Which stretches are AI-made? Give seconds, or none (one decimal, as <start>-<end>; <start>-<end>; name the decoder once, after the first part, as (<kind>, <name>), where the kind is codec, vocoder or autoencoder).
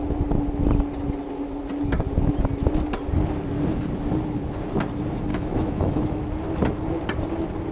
5.3-6.2 (autoencoder, DAC-VAE)